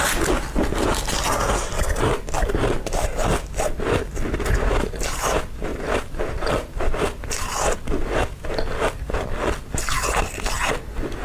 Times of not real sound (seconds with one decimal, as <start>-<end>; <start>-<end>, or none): 5.7-6.9